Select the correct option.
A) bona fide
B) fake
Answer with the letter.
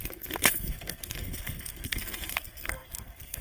B